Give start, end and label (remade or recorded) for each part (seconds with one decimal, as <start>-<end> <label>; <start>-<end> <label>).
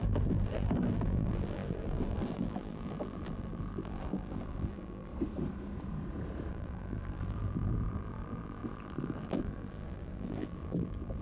0.0-5.1 remade; 5.1-6.5 recorded; 6.5-11.2 remade